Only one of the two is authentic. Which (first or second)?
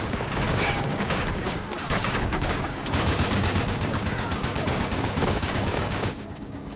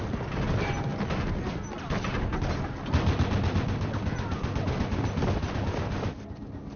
second